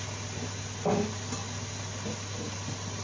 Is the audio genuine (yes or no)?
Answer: yes